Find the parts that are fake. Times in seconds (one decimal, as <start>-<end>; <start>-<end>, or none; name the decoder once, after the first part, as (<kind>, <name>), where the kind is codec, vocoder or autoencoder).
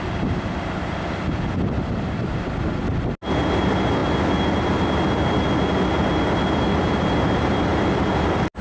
none